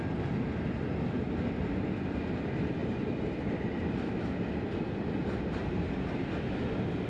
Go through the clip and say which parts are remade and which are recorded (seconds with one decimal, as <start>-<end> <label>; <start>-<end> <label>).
0.0-7.1 recorded